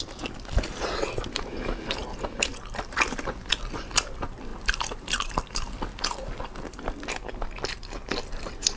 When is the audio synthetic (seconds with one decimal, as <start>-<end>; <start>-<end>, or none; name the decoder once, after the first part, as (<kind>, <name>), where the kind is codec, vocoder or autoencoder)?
2.5-3.5 (vocoder, BigVGAN v2); 4.5-7.1